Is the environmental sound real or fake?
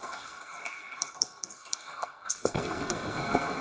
fake